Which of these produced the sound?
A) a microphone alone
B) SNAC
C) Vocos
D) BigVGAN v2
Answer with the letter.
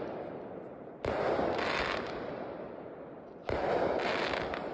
A